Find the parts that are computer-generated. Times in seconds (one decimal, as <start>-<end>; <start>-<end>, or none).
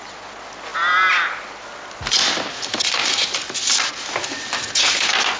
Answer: none